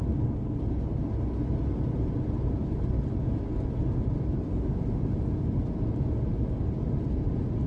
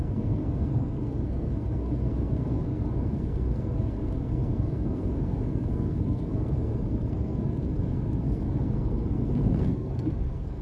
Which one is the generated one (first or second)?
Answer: second